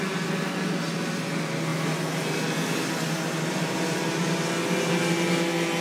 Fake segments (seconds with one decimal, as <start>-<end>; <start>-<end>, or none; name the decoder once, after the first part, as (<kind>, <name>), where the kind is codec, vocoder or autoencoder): none